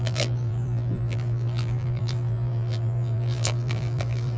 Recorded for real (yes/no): no